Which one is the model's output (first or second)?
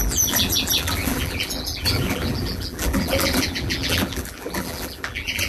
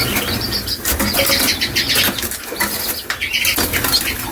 first